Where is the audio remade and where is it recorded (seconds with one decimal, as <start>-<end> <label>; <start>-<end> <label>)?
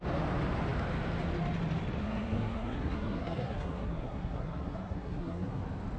0.0-2.0 recorded; 2.0-5.6 remade; 5.6-6.0 recorded